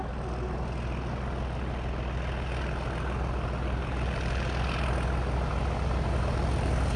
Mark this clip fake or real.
real